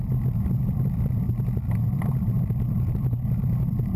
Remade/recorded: recorded